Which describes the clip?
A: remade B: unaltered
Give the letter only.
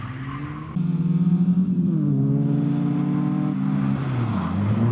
B